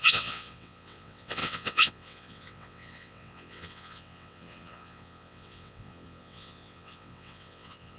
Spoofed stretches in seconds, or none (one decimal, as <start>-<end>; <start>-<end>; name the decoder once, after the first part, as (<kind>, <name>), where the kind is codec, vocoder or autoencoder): 0.0-8.0 (vocoder, WaveNeXt)